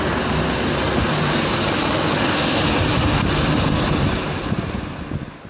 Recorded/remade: recorded